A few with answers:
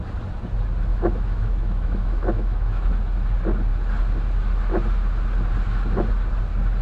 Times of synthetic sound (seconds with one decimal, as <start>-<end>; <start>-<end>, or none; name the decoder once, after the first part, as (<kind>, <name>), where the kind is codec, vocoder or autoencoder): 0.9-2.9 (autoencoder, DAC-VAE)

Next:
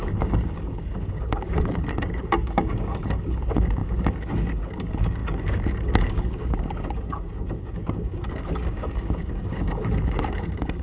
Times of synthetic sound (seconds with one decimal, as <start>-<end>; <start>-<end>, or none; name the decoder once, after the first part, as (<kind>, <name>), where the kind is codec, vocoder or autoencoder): 0.0-10.8 (codec, DAC)

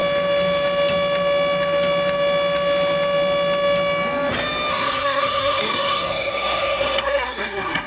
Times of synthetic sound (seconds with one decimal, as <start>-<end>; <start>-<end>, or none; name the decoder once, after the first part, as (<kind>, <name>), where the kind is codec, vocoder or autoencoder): 4.7-7.9 (codec, SNAC)

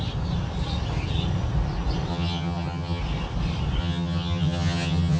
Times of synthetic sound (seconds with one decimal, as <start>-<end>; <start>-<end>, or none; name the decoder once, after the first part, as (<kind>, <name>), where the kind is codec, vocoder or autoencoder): 2.1-3.0 (vocoder, HiFi-GAN); 3.8-5.2

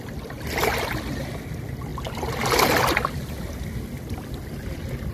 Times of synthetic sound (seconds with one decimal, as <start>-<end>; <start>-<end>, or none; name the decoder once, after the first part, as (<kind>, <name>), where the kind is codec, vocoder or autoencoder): none

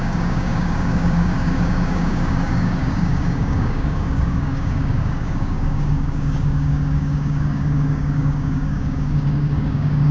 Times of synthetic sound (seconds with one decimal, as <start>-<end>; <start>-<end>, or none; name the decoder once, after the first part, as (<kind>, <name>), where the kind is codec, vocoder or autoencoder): 0.0-10.1 (codec, DAC)

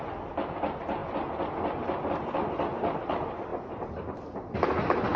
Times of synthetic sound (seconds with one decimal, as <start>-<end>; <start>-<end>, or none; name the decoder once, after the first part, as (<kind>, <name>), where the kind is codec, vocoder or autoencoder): none